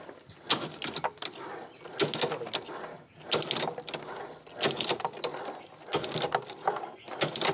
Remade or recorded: recorded